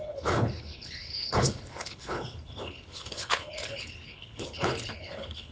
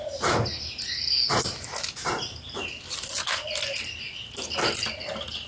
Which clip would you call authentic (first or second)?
second